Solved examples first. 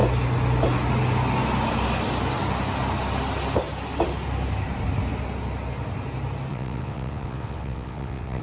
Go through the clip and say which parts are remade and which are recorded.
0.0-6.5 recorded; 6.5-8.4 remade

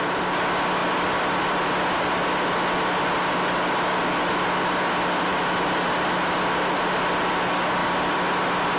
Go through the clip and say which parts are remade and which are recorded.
0.0-8.8 recorded

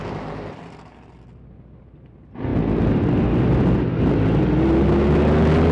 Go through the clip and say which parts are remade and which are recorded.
0.0-5.7 recorded